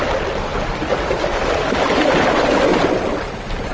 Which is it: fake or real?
real